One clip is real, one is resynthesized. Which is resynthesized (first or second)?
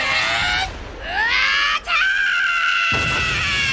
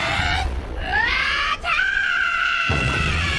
second